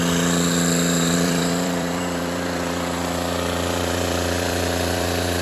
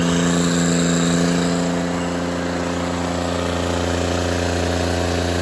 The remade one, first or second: first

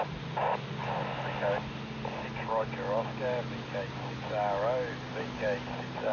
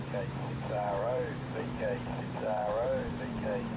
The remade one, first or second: second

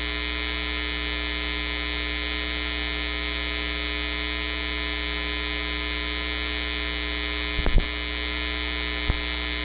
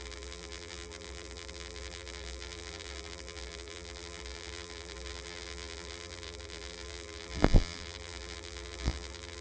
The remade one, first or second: second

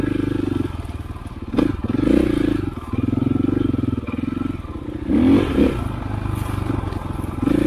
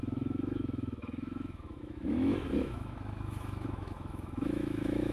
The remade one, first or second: second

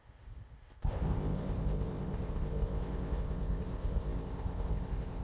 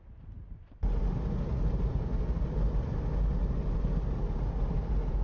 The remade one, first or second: first